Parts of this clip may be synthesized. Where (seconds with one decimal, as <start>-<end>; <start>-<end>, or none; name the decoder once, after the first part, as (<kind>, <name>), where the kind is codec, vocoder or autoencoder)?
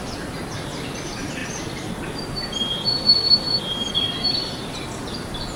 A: none